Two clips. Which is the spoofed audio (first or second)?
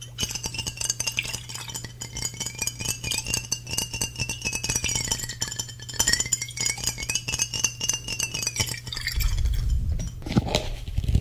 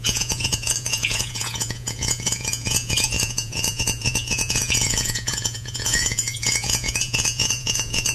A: second